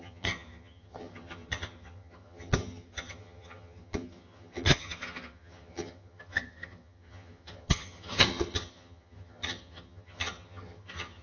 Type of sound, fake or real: fake